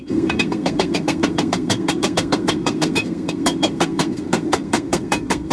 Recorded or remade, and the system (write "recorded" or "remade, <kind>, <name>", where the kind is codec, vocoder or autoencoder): remade, codec, SNAC